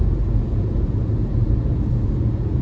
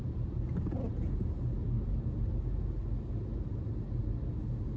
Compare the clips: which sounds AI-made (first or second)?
first